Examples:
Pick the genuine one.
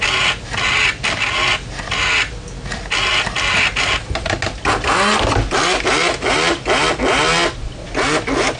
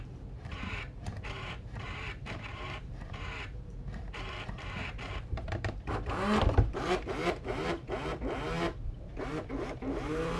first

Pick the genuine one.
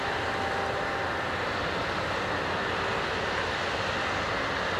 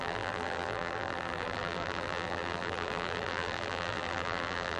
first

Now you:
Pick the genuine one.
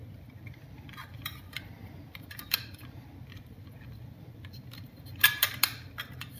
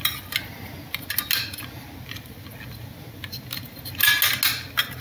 second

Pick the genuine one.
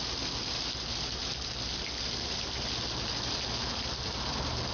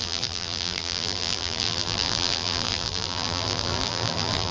first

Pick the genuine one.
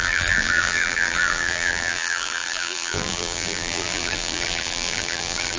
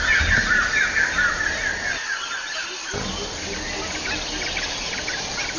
second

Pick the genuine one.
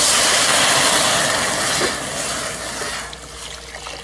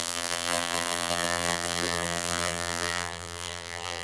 first